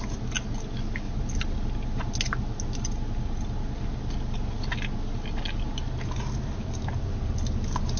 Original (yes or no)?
yes